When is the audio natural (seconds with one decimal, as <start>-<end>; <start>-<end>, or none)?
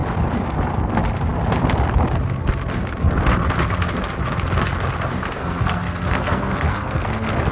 0.0-5.4